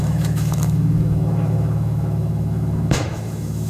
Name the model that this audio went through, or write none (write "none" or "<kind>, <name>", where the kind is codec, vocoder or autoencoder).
autoencoder, DAC-VAE